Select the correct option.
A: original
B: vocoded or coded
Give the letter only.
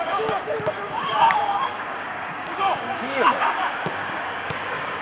B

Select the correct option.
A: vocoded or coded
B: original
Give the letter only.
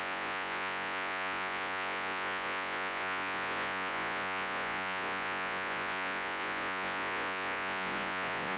A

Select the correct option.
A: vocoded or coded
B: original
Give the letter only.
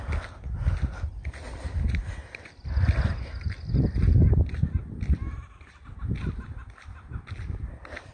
B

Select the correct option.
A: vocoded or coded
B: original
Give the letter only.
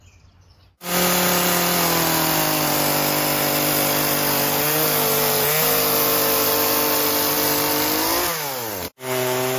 B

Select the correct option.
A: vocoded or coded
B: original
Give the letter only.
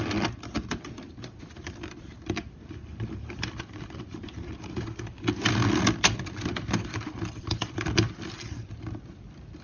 A